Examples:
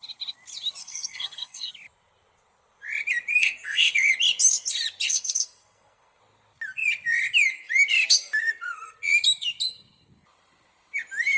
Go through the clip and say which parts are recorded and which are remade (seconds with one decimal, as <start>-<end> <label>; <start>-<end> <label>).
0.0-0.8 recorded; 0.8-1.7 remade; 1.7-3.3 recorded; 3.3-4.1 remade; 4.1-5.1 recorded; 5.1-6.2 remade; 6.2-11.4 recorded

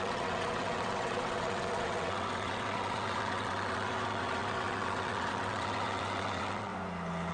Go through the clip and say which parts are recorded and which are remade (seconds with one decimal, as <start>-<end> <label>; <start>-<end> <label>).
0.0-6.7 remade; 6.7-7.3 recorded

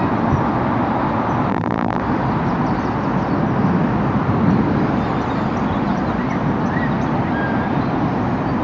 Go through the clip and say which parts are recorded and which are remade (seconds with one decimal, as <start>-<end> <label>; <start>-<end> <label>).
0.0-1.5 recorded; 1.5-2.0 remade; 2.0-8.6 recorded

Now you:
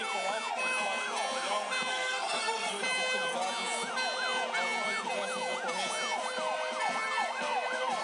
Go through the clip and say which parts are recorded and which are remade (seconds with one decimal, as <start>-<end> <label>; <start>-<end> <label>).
0.0-1.9 recorded; 1.9-2.8 remade; 2.8-8.0 recorded

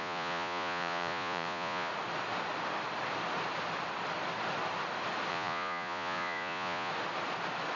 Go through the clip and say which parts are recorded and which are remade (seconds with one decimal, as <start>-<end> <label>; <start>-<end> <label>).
0.0-1.9 remade; 1.9-5.3 recorded; 5.3-6.9 remade; 6.9-7.8 recorded

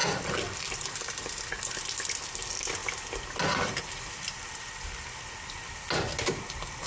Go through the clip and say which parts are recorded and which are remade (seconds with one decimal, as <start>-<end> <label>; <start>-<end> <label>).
0.0-6.9 recorded